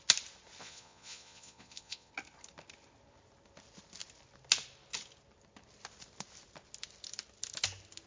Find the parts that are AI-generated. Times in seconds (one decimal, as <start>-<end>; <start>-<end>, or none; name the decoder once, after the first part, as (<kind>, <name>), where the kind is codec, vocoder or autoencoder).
0.6-2.1 (vocoder, Vocos)